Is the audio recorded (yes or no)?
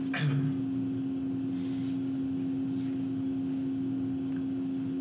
yes